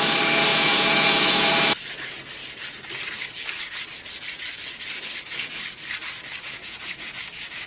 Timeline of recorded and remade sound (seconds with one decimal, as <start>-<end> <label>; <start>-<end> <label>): 0.0-0.5 recorded; 0.5-1.7 remade; 1.7-6.6 recorded; 6.6-7.1 remade; 7.1-7.7 recorded